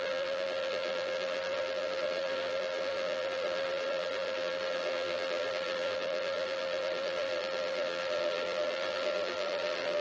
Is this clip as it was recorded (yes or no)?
no